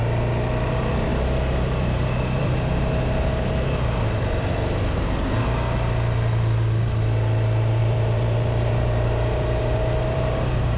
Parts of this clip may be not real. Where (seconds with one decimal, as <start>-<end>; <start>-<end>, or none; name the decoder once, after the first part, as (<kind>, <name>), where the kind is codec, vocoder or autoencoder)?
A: 7.8-10.8 (vocoder, BigVGAN v2)